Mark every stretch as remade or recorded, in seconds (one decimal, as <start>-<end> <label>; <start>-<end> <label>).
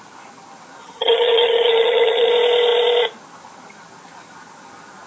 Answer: 0.0-0.8 recorded; 0.8-2.3 remade; 2.3-5.1 recorded